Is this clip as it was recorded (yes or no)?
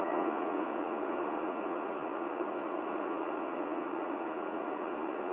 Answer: no